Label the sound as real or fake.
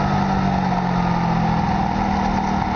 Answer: real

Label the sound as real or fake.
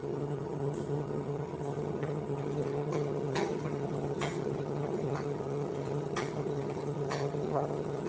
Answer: fake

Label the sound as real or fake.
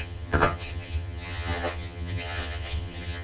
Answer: fake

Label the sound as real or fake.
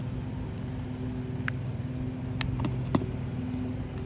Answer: real